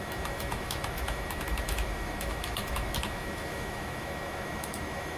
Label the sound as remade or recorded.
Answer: remade